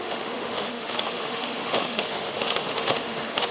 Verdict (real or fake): fake